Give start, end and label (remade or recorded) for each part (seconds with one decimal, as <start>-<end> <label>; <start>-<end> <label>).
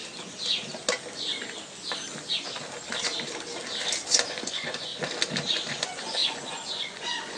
0.0-4.3 recorded; 4.3-4.9 remade; 4.9-5.6 recorded; 5.6-7.4 remade